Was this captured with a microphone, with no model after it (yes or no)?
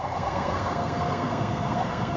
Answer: no